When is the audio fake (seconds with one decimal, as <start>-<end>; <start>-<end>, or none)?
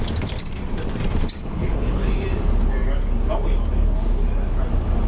1.4-2.1